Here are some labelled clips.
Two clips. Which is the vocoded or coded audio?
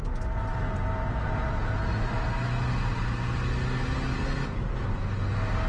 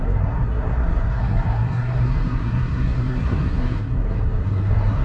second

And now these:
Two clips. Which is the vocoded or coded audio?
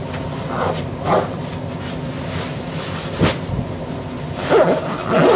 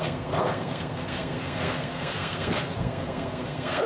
second